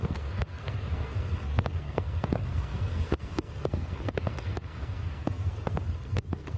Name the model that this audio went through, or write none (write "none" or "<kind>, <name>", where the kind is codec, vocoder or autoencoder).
codec, SNAC